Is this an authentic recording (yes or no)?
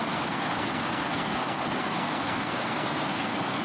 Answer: no